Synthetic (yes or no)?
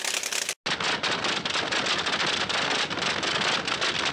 no